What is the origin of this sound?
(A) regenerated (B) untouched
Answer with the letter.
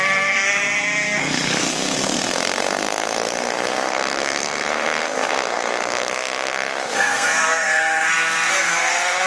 A